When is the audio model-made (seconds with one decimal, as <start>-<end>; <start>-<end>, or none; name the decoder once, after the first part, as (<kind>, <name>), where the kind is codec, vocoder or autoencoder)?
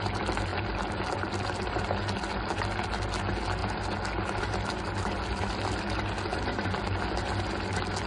none